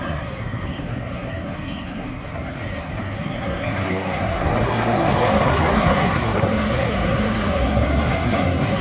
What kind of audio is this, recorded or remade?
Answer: remade